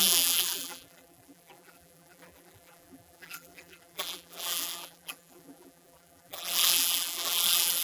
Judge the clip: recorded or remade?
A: remade